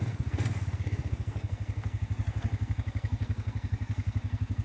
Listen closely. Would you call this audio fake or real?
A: fake